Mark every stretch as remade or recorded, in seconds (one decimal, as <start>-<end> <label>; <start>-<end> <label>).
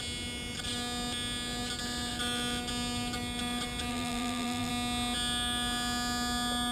0.0-3.9 recorded; 3.9-4.7 remade; 4.7-6.7 recorded